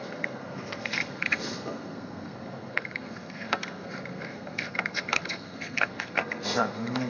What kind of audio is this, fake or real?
fake